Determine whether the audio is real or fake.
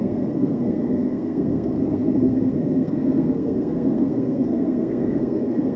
fake